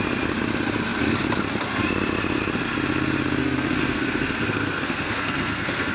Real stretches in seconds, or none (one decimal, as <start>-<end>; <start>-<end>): 0.0-3.4